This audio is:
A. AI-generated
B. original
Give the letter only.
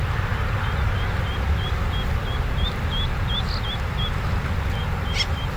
B